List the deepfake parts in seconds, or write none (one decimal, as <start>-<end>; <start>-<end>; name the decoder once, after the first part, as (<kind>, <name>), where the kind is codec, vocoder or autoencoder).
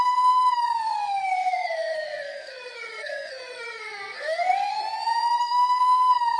0.0-4.8 (codec, SNAC); 5.4-6.4